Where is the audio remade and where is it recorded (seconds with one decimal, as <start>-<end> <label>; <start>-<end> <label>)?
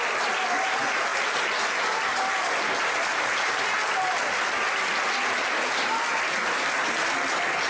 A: 0.0-7.7 recorded